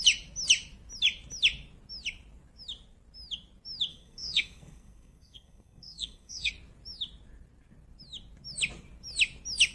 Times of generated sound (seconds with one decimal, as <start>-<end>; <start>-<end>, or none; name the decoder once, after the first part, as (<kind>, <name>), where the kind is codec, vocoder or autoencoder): 3.9-6.5 (codec, SNAC)